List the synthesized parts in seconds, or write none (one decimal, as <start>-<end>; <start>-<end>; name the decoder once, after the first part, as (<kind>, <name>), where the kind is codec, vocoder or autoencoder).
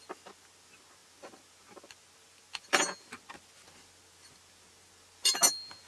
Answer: none